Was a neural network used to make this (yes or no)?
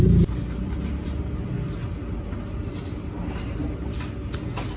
no